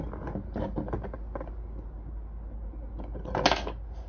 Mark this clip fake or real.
real